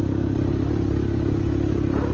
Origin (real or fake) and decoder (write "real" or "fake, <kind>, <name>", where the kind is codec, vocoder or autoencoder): real